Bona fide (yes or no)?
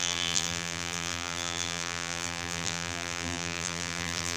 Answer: no